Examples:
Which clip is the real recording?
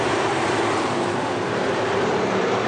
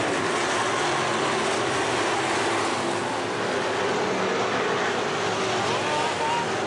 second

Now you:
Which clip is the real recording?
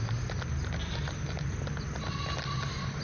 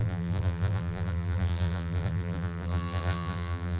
first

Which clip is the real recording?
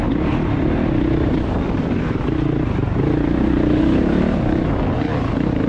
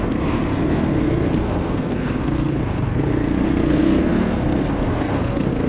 first